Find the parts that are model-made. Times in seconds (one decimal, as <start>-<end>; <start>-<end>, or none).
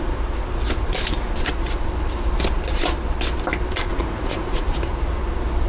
3.9-4.6